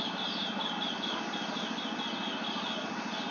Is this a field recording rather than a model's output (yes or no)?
yes